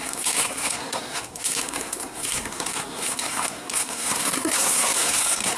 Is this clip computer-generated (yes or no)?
yes